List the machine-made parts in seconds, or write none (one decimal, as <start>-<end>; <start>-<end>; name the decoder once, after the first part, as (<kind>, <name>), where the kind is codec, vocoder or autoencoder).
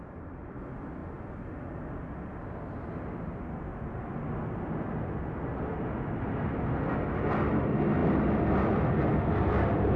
3.7-4.4 (vocoder, BigVGAN v2)